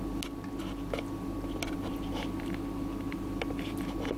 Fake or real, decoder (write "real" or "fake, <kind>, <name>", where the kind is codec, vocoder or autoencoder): real